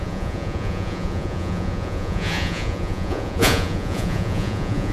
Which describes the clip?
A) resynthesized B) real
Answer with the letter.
A